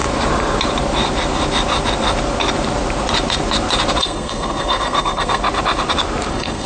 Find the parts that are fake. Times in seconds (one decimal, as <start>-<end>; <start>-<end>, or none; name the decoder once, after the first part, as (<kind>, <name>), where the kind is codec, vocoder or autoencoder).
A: 4.0-5.4 (codec, SNAC); 6.3-6.7

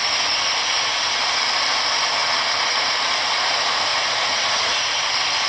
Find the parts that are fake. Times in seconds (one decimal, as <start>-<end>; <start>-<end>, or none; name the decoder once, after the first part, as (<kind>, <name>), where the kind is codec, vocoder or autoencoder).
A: 3.9-5.0 (vocoder, Vocos)

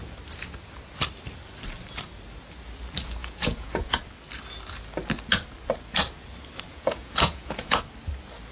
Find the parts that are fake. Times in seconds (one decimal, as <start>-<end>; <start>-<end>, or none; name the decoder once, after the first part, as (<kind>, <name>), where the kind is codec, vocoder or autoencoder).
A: 3.2-4.0 (vocoder, Vocos); 6.7-7.8